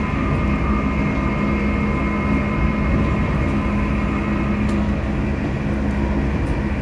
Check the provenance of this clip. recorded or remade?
recorded